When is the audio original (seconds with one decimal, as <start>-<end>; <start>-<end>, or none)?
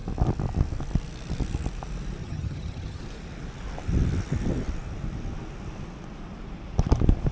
0.0-2.2; 3.0-7.3